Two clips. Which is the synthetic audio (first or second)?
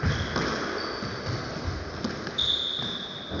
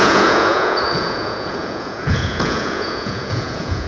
second